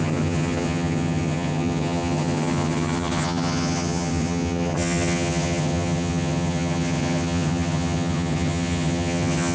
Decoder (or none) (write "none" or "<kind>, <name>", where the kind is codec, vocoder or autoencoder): vocoder, HiFi-GAN